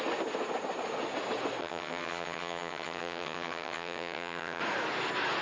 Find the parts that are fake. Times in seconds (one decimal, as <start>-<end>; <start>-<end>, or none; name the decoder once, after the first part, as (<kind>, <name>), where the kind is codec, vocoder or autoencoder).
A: 1.6-4.6 (vocoder, HiFi-GAN)